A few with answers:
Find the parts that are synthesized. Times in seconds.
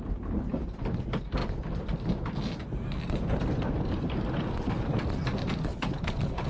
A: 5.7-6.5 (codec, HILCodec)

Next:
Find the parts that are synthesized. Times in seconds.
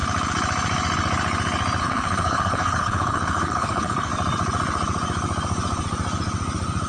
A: 1.8-4.1 (codec, HILCodec)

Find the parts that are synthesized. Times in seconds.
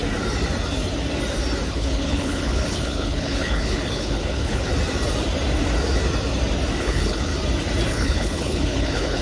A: 1.7-4.7 (codec, HILCodec); 6.8-7.3; 7.9-9.2